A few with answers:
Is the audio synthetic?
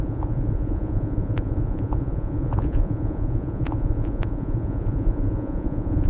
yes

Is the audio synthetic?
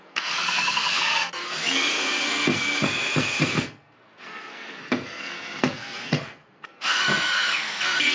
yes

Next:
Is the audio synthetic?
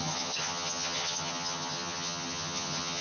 yes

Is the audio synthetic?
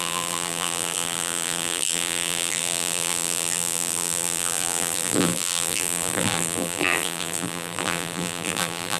yes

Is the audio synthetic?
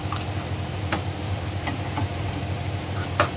no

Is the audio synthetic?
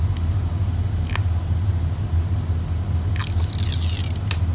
no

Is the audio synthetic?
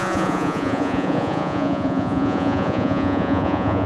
yes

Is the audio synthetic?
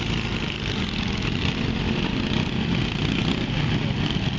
no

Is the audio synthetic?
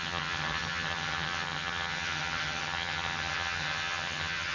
yes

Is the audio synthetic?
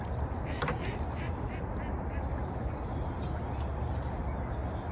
no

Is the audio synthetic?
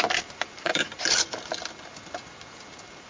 no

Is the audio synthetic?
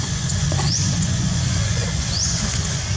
yes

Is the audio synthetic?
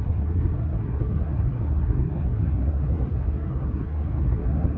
yes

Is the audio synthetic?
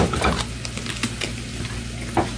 no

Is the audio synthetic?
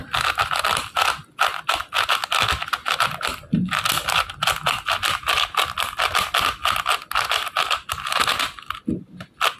no